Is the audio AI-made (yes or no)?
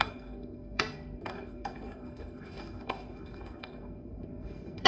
yes